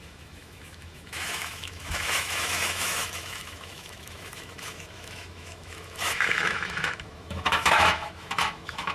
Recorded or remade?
remade